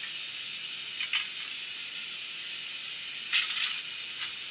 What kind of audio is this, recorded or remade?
recorded